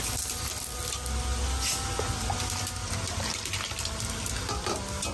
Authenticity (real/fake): real